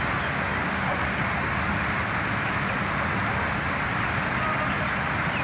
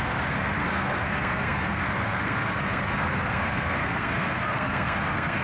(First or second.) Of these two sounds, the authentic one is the first